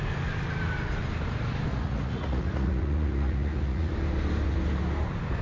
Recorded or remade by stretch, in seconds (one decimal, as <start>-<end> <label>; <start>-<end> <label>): 0.0-1.7 recorded; 1.7-3.9 remade; 3.9-5.4 recorded